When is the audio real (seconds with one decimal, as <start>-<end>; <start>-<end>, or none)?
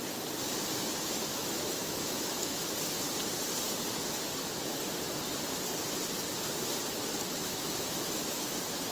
0.0-1.3; 2.6-7.4; 8.5-8.9